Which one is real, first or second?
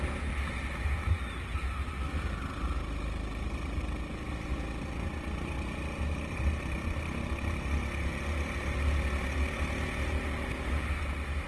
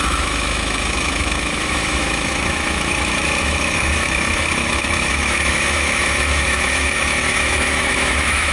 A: first